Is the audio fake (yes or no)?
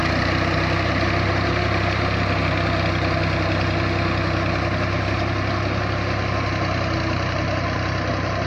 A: no